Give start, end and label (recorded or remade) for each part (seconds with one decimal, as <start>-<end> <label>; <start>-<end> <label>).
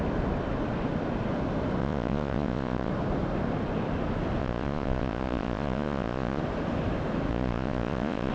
0.0-1.8 recorded; 1.8-2.9 remade; 2.9-4.4 recorded; 4.4-6.4 remade; 6.4-7.3 recorded; 7.3-8.3 remade